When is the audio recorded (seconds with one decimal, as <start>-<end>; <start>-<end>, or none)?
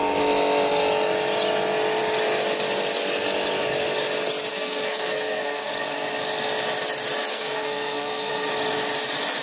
0.0-4.5; 5.7-7.3; 8.5-9.4